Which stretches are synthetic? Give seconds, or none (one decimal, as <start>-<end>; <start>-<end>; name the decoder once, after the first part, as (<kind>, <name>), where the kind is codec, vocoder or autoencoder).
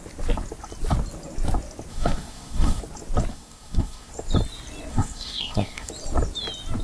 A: 1.9-2.8 (codec, SNAC); 3.3-4.1; 4.9-5.9